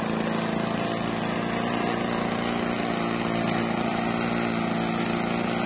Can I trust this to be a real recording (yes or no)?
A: yes